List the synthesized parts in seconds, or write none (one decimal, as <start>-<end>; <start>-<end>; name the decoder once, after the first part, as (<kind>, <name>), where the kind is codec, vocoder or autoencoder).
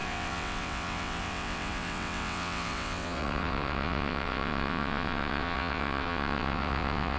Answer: 0.0-7.2 (vocoder, WaveNeXt)